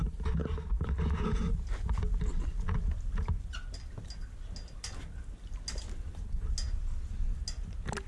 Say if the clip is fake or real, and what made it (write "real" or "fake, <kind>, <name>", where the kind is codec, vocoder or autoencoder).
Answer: real